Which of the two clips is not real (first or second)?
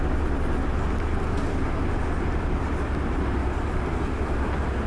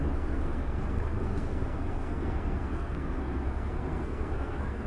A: second